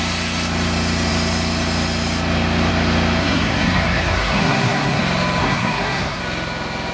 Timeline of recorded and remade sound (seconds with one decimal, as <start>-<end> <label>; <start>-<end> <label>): 0.0-3.2 recorded; 3.2-5.0 remade; 5.0-5.4 recorded; 5.4-6.2 remade; 6.2-6.9 recorded